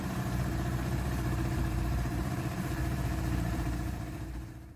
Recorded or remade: remade